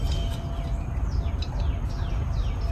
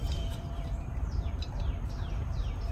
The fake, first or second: second